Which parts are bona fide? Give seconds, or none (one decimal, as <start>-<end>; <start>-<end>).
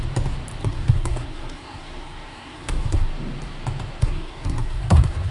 0.0-0.6; 3.1-4.0